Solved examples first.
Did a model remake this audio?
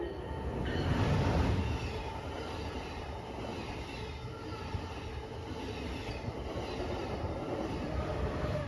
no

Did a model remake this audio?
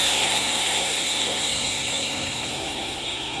yes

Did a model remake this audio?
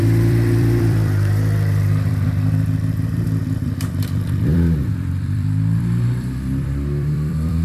yes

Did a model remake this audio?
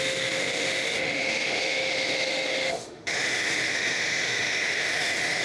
yes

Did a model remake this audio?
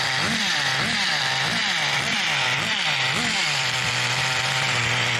yes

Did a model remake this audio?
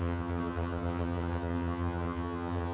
yes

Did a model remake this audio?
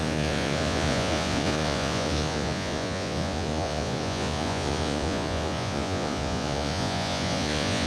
yes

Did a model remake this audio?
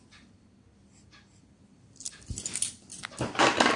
no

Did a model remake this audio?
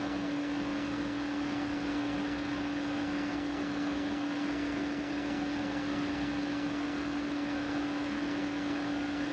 yes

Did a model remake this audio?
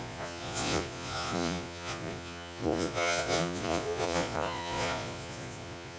yes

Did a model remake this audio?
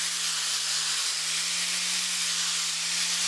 no